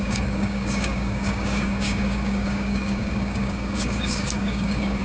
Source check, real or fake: fake